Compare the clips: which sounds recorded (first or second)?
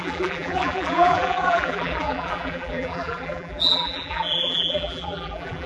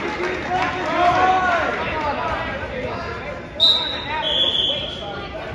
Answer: second